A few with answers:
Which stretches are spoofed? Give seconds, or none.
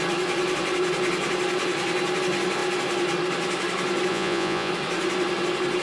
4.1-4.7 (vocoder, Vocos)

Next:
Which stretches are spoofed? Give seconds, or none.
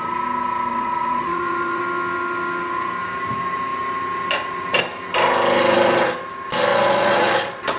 0.7-1.8 (vocoder, Vocos); 6.7-7.8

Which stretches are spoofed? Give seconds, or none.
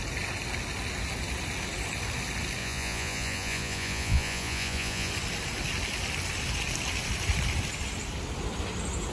2.6-5.1 (vocoder, Vocos)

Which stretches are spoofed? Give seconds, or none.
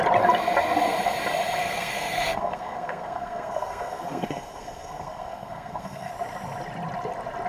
1.6-6.1 (codec, SNAC)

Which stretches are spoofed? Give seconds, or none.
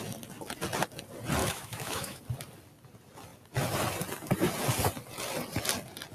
1.4-2.2 (autoencoder, DAC-VAE)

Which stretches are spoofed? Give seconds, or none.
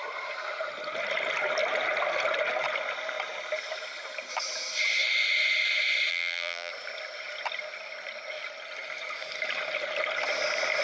6.1-6.7 (vocoder, BigVGAN v2)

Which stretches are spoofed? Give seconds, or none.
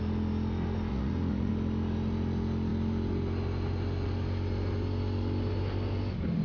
0.9-1.5 (vocoder, Vocos)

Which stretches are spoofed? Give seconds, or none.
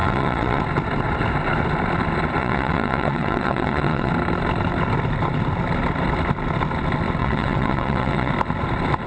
0.0-0.6 (vocoder, WaveNeXt); 2.4-4.1; 7.2-8.3